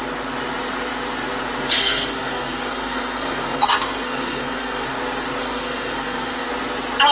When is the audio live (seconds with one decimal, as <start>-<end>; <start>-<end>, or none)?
0.0-1.8; 5.0-5.4; 6.5-7.1